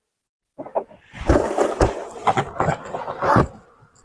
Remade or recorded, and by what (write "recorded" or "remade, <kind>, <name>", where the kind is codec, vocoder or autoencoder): recorded